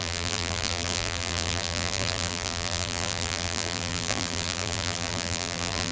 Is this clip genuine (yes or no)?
no